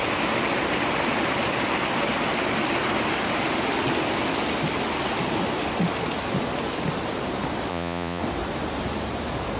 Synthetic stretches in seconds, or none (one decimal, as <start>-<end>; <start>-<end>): 7.7-8.2

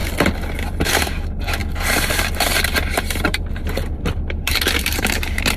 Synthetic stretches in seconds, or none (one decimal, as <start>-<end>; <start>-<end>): 0.9-5.6

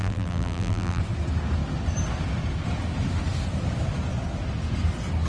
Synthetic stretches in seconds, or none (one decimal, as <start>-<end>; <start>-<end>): 0.0-1.0

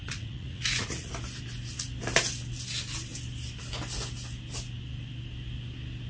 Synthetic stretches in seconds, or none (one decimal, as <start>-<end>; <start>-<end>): 0.0-1.1

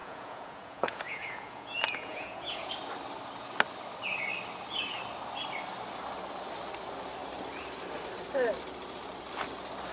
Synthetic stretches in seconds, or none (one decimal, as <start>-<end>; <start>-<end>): 0.0-2.7